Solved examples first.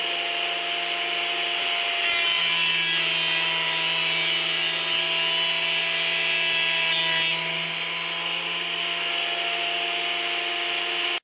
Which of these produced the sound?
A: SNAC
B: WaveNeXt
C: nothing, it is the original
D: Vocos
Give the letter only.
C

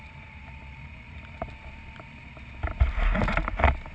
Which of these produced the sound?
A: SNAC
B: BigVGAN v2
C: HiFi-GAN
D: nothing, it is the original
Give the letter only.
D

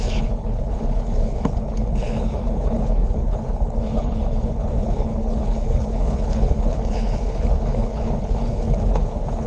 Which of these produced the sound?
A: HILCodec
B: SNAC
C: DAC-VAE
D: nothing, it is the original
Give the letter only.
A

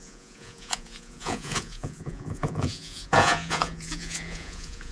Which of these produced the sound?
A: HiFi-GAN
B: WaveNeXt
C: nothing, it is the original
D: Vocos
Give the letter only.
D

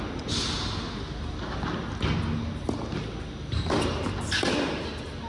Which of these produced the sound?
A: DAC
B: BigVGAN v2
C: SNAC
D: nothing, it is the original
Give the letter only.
D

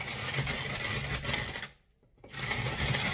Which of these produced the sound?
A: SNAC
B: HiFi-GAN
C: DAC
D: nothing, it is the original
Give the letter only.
D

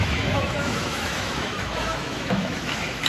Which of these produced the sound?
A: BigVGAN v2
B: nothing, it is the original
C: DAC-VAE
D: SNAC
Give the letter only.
C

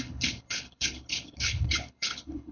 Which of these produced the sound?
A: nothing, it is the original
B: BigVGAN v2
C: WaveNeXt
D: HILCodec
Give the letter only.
D